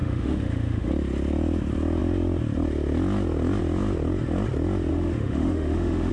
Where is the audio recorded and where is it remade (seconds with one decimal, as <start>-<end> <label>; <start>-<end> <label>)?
0.0-0.9 remade; 0.9-4.9 recorded; 4.9-6.1 remade